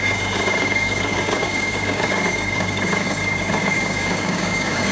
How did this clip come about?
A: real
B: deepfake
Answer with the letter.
B